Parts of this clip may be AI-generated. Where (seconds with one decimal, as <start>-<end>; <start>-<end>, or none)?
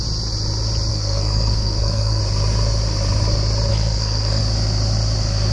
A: 0.9-2.2; 3.7-4.4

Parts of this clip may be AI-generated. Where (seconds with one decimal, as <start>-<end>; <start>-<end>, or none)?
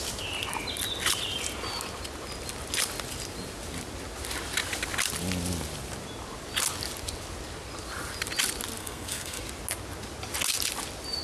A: 8.8-9.4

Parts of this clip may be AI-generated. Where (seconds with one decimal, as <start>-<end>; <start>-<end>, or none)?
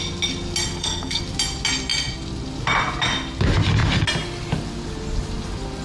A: 0.7-1.2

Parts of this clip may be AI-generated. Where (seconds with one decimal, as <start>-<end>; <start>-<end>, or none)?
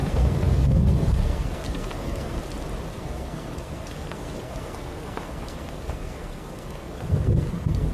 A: 0.0-2.4; 2.9-7.9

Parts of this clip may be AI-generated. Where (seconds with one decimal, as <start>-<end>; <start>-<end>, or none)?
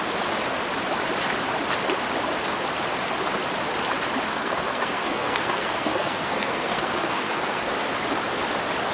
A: 4.3-7.7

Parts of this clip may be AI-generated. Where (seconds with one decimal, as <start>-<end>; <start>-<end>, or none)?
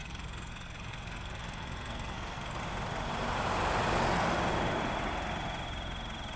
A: 0.0-2.6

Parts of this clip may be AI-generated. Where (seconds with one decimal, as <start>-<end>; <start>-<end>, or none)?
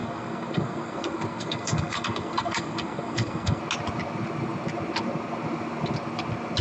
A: 0.0-3.6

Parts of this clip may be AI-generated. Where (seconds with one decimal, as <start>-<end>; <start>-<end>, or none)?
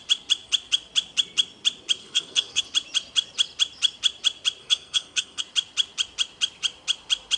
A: 2.0-2.6; 4.6-5.4